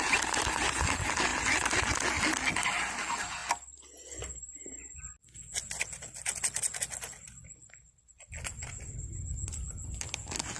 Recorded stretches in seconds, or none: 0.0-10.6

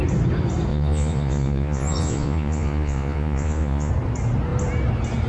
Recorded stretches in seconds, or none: 0.0-0.7; 3.9-5.3

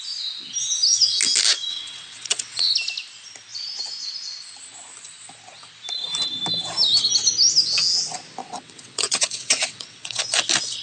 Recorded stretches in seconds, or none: 0.0-1.7; 2.7-8.4; 10.2-10.8

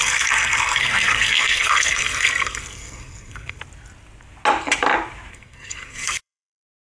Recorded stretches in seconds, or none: 3.6-5.3

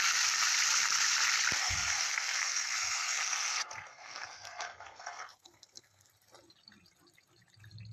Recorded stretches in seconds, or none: 0.0-1.6; 6.1-7.9

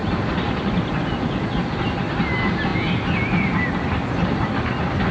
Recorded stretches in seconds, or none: 0.0-5.1

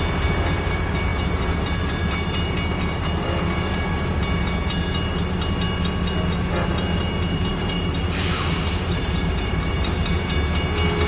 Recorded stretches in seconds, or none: 0.0-7.5; 9.9-11.1

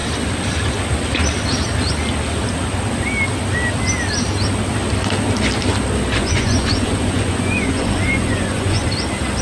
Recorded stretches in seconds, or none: 0.0-6.2; 8.9-9.4